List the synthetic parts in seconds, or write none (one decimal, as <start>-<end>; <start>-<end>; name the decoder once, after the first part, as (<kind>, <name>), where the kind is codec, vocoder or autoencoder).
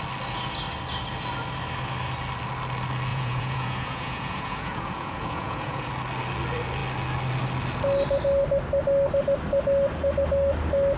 3.1-5.9 (vocoder, Vocos)